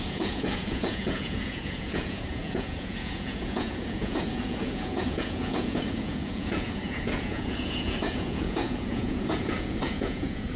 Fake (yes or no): yes